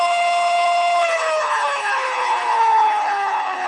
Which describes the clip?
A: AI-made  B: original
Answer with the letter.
A